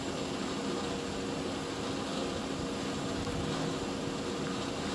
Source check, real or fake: real